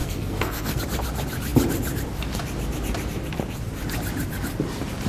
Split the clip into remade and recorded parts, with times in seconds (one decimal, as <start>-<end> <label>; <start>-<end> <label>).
0.0-0.8 remade; 0.8-5.1 recorded